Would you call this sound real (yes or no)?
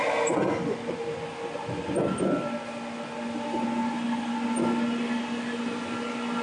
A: yes